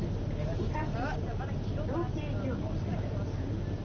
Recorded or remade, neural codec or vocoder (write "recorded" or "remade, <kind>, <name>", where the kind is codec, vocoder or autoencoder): recorded